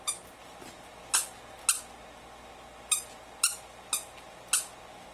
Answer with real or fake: real